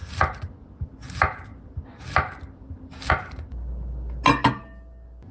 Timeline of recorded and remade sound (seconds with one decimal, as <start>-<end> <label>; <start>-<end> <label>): 0.0-5.3 recorded